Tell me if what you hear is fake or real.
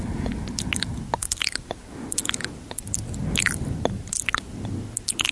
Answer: real